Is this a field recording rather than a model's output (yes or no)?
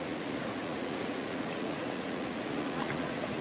no